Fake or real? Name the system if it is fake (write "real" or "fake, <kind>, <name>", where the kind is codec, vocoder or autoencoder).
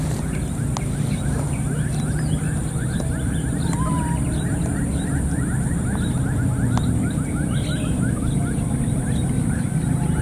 real